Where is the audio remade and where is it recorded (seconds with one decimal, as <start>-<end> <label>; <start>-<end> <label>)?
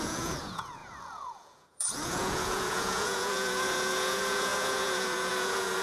0.0-5.8 remade